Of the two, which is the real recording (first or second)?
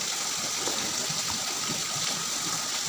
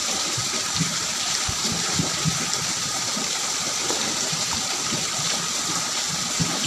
first